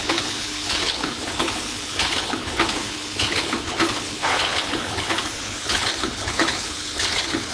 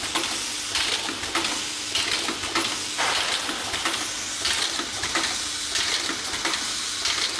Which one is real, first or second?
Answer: second